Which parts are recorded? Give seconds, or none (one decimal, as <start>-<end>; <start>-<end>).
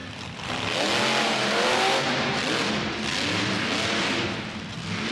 0.0-1.2; 2.4-5.1